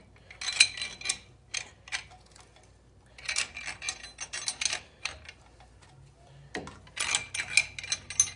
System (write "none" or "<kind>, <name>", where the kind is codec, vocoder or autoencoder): none